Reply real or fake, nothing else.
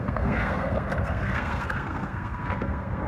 fake